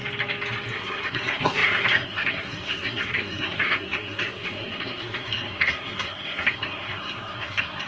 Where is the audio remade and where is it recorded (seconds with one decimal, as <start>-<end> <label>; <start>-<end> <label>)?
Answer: 0.0-0.7 recorded; 0.7-7.9 remade